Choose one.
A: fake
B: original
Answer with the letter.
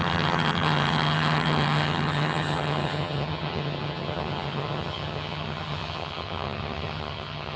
A